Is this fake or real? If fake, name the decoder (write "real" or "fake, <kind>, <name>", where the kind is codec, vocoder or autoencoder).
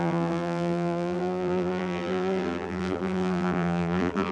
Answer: fake, vocoder, BigVGAN v2